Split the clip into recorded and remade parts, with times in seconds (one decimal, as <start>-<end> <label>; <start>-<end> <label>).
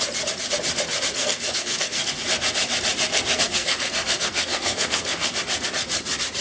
0.0-1.1 recorded; 1.1-2.1 remade; 2.1-3.1 recorded; 3.1-5.3 remade; 5.3-6.4 recorded